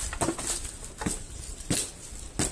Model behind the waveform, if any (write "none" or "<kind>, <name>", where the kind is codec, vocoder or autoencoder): none